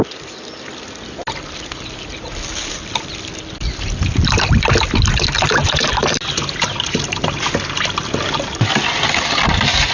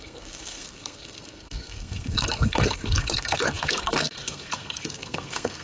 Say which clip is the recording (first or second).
first